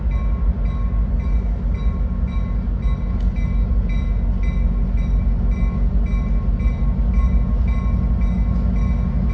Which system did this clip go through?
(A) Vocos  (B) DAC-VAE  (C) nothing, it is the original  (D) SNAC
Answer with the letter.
C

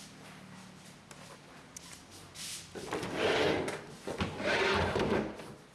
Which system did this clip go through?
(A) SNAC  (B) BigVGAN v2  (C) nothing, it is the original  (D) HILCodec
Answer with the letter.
C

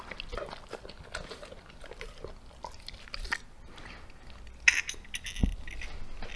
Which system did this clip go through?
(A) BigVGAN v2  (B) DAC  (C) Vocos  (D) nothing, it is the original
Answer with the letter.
D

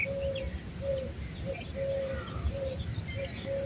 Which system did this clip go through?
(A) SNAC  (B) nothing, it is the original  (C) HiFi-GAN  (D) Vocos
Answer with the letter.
B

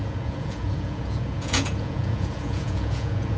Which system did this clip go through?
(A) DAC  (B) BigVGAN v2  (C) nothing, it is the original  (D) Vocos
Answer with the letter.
D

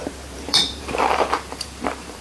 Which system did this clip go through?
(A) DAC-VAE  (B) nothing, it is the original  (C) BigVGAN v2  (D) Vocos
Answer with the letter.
C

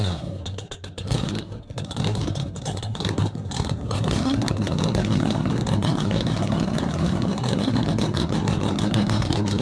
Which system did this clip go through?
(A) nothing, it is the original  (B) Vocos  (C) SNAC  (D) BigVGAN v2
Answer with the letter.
C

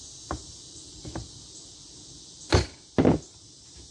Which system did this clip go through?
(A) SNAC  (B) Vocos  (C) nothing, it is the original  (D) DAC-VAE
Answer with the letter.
C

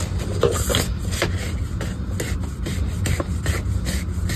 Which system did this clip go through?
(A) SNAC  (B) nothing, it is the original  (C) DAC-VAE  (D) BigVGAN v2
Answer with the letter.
B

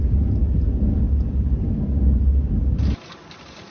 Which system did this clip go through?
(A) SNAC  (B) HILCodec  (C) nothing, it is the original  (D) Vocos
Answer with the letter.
C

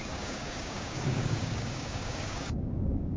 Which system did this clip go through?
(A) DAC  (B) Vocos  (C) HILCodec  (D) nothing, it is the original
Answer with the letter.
A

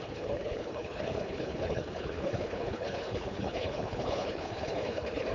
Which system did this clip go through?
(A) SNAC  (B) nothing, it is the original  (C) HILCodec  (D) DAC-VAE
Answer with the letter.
C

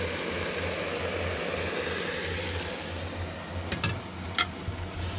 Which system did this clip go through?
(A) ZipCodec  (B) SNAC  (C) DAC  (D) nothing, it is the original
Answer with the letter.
D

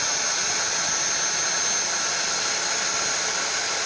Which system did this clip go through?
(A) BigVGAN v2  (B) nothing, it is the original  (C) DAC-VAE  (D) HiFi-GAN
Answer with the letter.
B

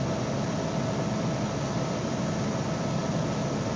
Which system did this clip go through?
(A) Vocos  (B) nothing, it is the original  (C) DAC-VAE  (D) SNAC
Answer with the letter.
B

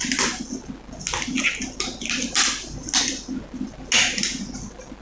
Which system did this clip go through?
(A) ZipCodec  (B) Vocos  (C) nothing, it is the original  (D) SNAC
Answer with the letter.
C